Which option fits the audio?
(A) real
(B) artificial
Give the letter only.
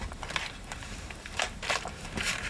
A